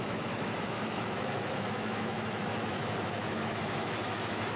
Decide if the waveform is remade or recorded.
remade